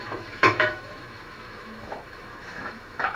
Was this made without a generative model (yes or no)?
no